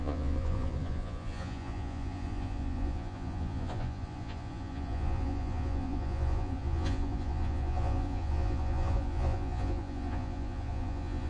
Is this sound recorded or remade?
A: remade